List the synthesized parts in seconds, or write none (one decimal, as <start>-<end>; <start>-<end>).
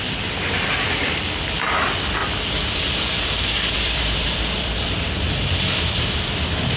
2.2-6.3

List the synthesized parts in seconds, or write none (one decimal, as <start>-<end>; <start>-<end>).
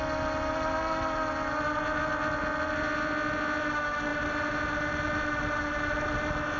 none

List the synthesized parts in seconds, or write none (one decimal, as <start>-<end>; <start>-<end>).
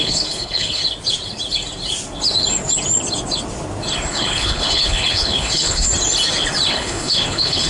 0.0-0.8; 4.1-5.9; 6.7-7.7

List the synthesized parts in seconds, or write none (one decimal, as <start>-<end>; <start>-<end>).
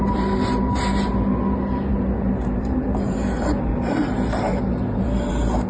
1.9-5.3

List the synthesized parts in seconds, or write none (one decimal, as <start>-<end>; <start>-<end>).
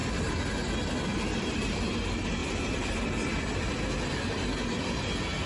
none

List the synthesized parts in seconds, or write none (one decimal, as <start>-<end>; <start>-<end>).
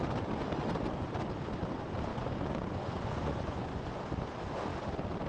2.1-4.0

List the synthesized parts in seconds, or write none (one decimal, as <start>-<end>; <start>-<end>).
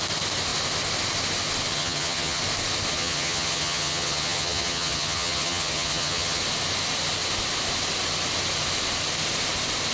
1.7-2.4; 2.9-6.4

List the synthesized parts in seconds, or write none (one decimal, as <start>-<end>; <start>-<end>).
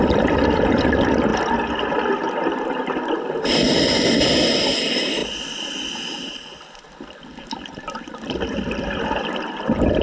5.2-5.7